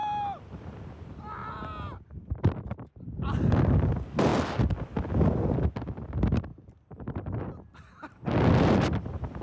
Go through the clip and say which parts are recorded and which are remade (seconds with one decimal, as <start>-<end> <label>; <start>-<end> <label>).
0.0-6.5 recorded; 6.5-7.4 remade; 7.4-9.4 recorded